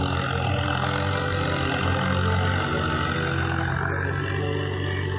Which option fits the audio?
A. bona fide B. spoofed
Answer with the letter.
A